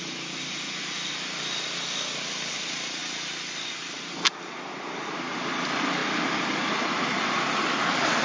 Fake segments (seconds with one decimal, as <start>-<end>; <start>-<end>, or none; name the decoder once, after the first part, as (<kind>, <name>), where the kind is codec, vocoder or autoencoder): none